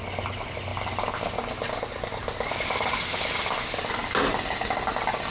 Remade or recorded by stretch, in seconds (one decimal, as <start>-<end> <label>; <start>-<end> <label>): 0.0-5.3 recorded